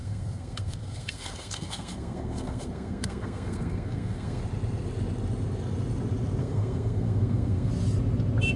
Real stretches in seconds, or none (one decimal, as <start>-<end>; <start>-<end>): 4.4-6.4; 7.7-8.6